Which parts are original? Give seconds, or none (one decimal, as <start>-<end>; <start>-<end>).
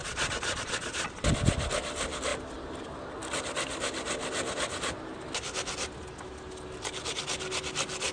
1.2-8.1